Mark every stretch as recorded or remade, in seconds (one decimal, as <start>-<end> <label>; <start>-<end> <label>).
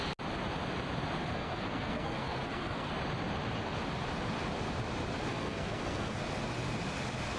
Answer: 0.0-1.2 recorded; 1.2-2.9 remade; 2.9-5.3 recorded; 5.3-6.2 remade; 6.2-7.4 recorded